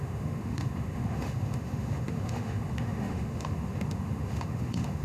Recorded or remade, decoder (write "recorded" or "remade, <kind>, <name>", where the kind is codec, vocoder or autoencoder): remade, autoencoder, DAC-VAE